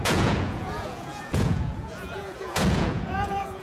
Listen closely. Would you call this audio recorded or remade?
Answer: remade